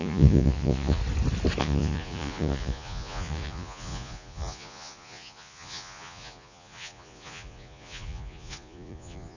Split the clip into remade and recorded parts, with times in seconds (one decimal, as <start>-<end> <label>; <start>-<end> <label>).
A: 0.0-1.0 remade; 1.0-1.6 recorded; 1.6-9.4 remade